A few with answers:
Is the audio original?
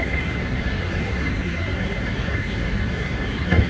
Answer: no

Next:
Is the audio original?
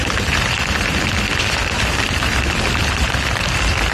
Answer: no